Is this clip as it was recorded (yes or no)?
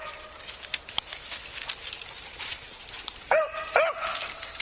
yes